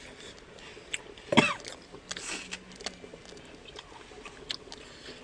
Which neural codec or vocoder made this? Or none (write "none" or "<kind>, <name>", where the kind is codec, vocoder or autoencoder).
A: none